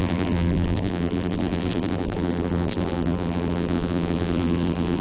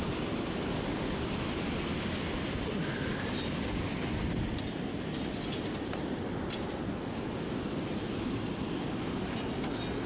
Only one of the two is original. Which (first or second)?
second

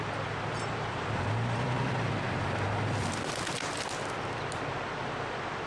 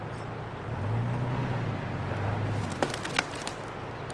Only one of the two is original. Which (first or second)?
second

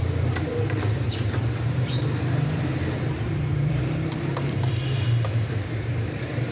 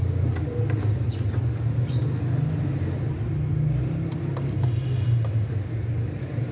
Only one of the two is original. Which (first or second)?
second